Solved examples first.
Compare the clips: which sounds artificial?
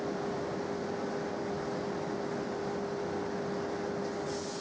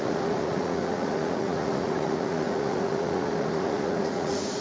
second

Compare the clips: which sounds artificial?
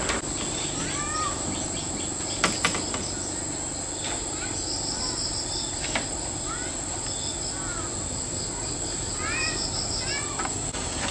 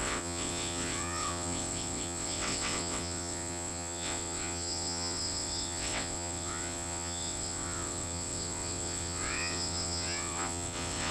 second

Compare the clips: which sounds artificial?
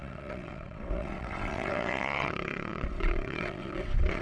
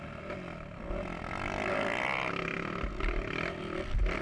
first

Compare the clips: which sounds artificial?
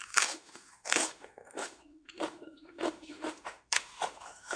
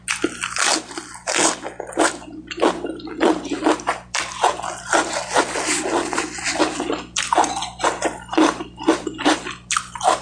first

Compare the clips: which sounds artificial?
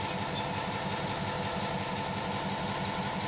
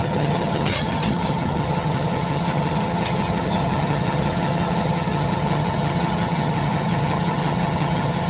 second